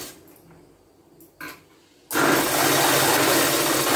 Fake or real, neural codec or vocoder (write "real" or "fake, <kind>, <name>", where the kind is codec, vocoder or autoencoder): real